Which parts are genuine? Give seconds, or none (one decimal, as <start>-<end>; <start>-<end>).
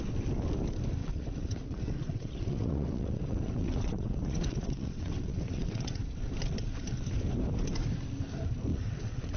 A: 0.0-1.0; 6.0-8.7